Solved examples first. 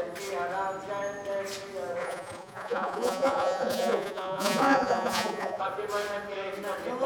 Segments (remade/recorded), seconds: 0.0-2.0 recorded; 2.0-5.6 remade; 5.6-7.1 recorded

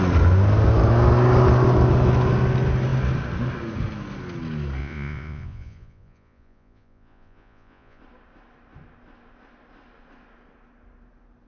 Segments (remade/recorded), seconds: 0.0-4.8 recorded; 4.8-8.0 remade; 8.0-11.5 recorded

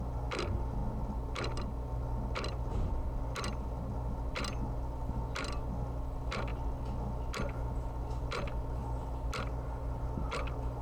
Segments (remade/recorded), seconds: 0.0-10.8 recorded